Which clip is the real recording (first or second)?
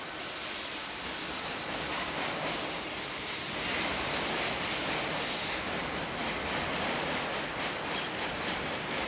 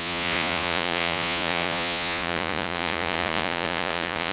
first